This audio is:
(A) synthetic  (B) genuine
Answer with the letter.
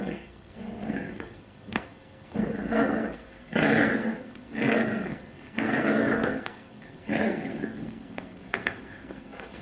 A